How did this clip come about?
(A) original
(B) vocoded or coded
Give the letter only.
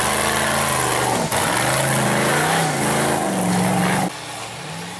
A